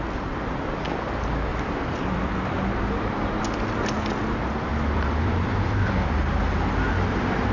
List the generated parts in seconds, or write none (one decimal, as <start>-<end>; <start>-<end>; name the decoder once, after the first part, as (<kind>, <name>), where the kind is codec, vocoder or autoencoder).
1.5-3.4 (vocoder, BigVGAN v2); 4.7-6.1